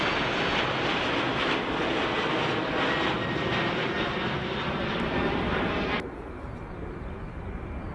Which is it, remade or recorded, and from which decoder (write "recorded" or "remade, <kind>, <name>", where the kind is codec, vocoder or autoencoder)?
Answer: recorded